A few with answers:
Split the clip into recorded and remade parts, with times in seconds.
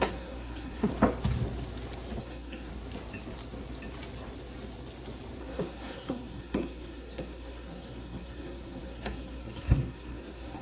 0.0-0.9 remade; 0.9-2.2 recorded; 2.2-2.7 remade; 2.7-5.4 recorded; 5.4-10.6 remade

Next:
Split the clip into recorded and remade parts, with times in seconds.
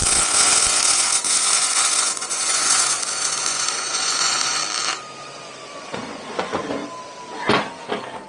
0.0-4.6 remade; 4.6-5.2 recorded; 5.2-6.8 remade; 6.8-8.3 recorded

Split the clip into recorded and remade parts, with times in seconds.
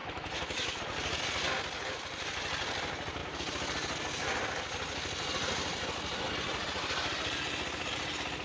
0.0-0.8 remade; 0.8-8.4 recorded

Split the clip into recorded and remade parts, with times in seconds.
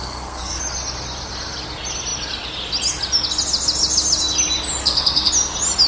0.0-0.6 remade; 0.6-4.8 recorded; 4.8-5.3 remade; 5.3-5.9 recorded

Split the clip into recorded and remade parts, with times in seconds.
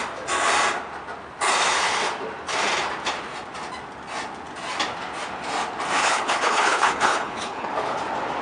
0.0-6.0 recorded; 6.0-7.7 remade; 7.7-8.4 recorded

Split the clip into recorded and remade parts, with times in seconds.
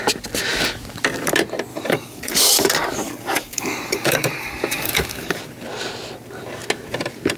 0.0-1.7 recorded; 1.7-5.4 remade; 5.4-7.4 recorded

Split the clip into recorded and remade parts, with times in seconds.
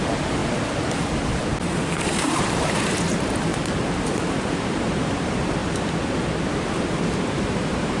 0.0-0.4 remade; 0.4-1.9 recorded; 1.9-3.5 remade; 3.5-4.4 recorded; 4.4-5.6 remade; 5.6-7.3 recorded; 7.3-8.0 remade